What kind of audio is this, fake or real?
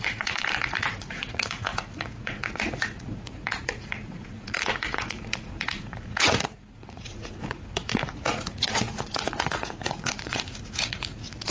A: fake